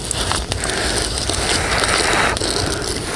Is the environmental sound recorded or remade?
recorded